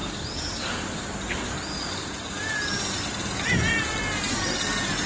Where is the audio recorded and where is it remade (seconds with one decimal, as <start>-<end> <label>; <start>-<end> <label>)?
0.0-5.1 recorded